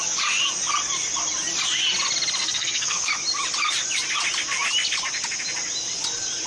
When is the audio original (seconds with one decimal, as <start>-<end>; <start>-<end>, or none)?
0.0-2.4; 3.1-6.5